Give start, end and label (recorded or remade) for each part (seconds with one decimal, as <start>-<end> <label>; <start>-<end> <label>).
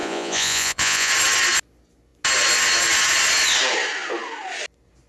0.0-1.1 remade; 1.1-5.1 recorded